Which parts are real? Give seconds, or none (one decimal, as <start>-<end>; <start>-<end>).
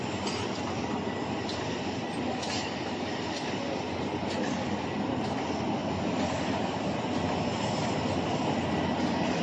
0.0-9.4